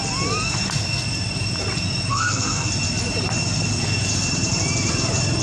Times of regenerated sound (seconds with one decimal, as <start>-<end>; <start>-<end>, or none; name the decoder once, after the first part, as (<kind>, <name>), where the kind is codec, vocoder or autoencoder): 2.1-2.7 (codec, SNAC)